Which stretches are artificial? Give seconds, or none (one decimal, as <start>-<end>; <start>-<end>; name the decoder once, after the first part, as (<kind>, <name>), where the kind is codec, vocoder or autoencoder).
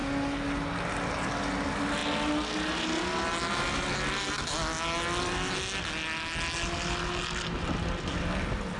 none